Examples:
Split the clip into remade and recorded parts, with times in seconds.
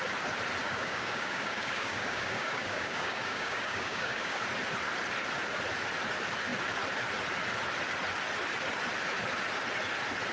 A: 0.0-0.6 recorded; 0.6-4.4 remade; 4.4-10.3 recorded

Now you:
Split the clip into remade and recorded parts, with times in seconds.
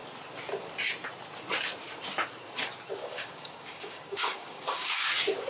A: 0.0-3.0 recorded; 3.0-5.1 remade; 5.1-5.5 recorded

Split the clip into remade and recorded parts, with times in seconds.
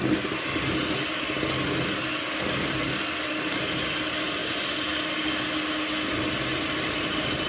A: 0.0-7.5 recorded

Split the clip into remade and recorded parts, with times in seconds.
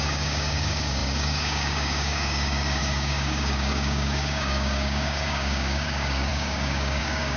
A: 0.0-7.4 remade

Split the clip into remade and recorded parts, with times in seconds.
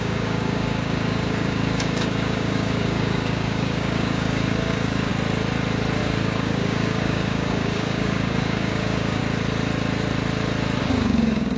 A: 0.0-5.1 remade; 5.1-6.0 recorded; 6.0-9.2 remade; 9.2-10.8 recorded; 10.8-11.6 remade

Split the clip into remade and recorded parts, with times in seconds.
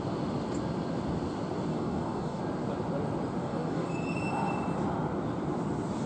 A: 0.0-1.7 recorded; 1.7-2.4 remade; 2.4-3.4 recorded; 3.4-3.9 remade; 3.9-6.1 recorded